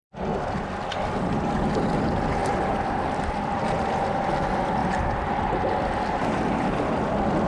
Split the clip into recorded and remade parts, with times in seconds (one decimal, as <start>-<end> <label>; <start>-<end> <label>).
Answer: 0.0-2.4 recorded; 2.4-3.6 remade; 3.6-7.5 recorded